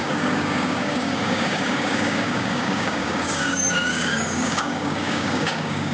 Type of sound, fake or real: fake